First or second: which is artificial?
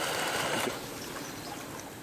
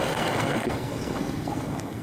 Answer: second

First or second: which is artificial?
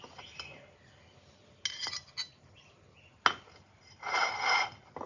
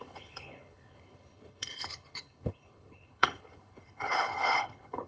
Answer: second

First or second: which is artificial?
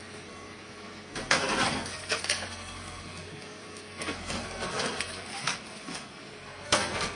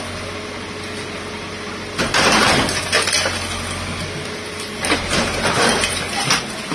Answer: first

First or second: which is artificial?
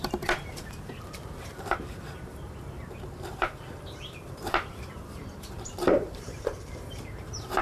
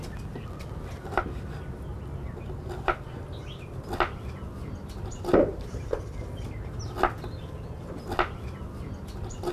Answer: first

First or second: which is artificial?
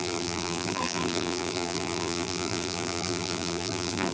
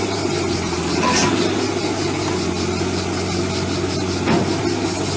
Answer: first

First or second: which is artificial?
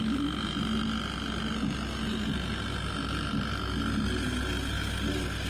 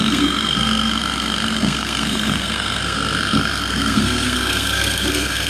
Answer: second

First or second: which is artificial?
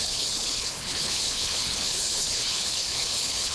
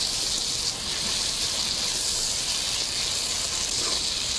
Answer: first